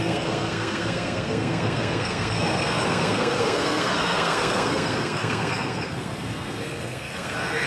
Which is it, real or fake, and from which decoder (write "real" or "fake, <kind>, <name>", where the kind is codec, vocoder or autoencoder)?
fake, codec, SNAC